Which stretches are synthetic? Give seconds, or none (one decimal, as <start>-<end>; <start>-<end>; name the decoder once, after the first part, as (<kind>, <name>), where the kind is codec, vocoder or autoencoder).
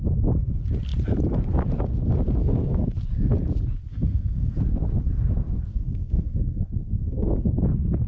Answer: 2.4-2.9 (codec, SNAC); 3.9-4.6; 5.7-7.6